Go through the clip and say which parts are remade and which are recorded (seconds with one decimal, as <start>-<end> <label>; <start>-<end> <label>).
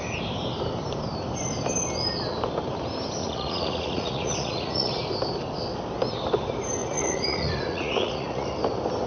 0.0-3.2 recorded; 3.2-4.9 remade; 4.9-6.8 recorded; 6.8-8.6 remade; 8.6-9.1 recorded